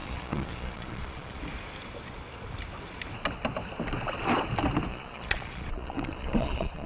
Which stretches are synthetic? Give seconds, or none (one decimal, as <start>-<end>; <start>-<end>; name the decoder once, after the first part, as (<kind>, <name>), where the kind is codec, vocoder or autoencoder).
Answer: 0.0-1.4 (vocoder, Vocos); 4.9-6.9